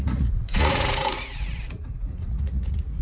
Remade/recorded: remade